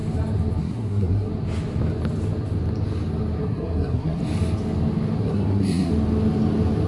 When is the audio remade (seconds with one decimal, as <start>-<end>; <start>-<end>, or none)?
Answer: 0.6-1.3; 3.4-4.2; 5.2-5.9